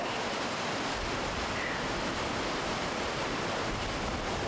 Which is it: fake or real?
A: real